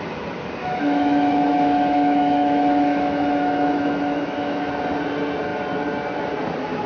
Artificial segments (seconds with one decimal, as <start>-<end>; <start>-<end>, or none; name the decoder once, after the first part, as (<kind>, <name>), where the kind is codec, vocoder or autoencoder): 0.6-4.7 (autoencoder, DAC-VAE)